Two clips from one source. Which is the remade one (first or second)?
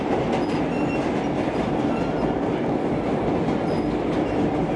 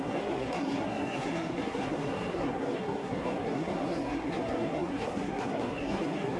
second